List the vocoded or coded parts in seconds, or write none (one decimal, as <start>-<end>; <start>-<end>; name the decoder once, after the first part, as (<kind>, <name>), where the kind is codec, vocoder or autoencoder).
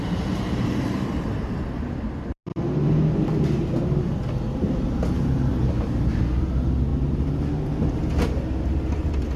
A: none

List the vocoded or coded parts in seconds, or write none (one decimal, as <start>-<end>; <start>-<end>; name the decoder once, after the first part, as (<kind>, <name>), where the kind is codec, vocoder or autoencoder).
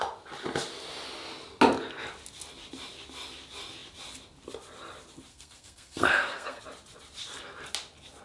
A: 5.3-6.6 (codec, SNAC)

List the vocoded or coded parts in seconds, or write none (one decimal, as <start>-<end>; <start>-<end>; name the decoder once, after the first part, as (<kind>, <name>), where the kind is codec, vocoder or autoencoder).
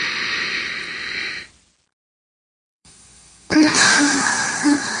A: 1.9-5.0 (codec, SNAC)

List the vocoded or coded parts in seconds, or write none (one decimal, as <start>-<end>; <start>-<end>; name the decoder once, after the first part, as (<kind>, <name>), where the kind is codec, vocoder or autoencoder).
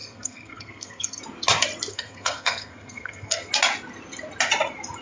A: 0.0-1.2 (codec, SNAC); 1.9-3.5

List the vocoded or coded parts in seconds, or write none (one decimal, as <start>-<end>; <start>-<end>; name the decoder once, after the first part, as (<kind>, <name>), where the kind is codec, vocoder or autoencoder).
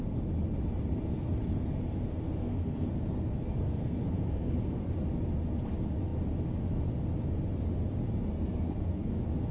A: 0.9-4.9 (codec, SNAC); 8.3-9.1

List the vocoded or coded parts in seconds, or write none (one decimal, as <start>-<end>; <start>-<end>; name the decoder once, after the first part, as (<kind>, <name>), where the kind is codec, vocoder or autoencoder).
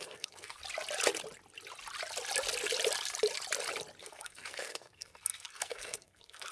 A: 0.0-0.6 (codec, SNAC); 4.0-6.5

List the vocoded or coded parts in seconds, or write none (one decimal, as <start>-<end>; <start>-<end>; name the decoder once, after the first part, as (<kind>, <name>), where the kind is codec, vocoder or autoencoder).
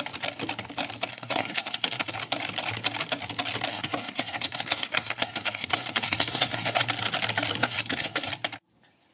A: 1.1-2.1 (codec, SNAC); 3.7-6.8; 7.6-8.3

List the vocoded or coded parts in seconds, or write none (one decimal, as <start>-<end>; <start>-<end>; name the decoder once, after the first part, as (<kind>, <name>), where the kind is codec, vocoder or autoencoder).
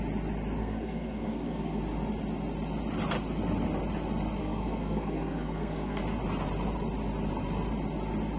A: 0.6-1.8 (codec, SNAC); 4.4-6.0